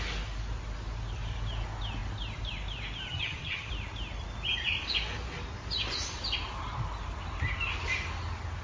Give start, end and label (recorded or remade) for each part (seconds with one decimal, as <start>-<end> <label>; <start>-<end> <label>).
0.0-3.1 recorded; 3.1-3.7 remade; 3.7-8.6 recorded